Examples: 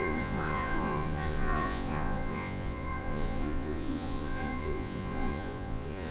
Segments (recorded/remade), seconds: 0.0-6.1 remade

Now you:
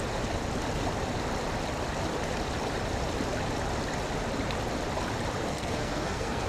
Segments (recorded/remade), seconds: 0.0-5.4 recorded; 5.4-6.5 remade

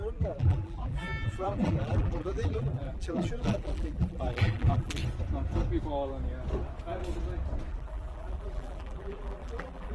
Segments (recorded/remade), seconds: 0.0-5.0 remade; 5.0-7.7 recorded; 7.7-9.9 remade

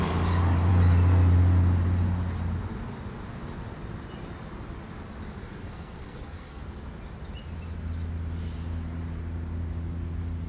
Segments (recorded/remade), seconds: 0.0-5.4 recorded; 5.4-6.6 remade; 6.6-10.5 recorded

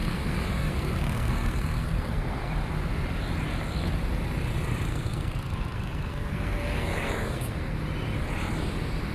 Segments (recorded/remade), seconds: 0.0-2.5 remade; 2.5-4.9 recorded; 4.9-7.8 remade; 7.8-9.1 recorded

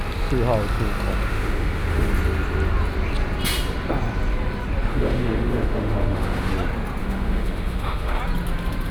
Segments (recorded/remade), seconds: 0.0-1.3 recorded; 1.3-2.1 remade; 2.1-4.9 recorded; 4.9-6.5 remade; 6.5-7.0 recorded; 7.0-8.2 remade; 8.2-8.9 recorded

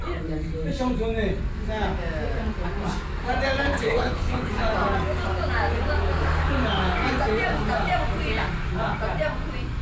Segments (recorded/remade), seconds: 0.0-3.7 recorded; 3.7-4.5 remade; 4.5-9.8 recorded